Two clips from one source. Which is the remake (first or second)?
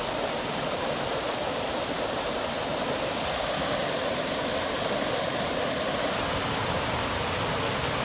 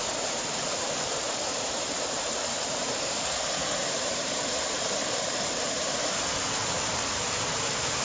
second